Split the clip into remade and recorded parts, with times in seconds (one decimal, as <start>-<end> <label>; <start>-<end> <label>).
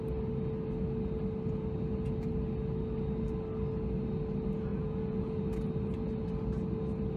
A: 0.0-4.7 recorded; 4.7-5.4 remade; 5.4-7.2 recorded